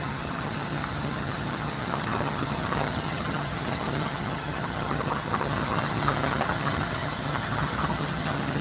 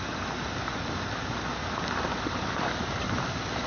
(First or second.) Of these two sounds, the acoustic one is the second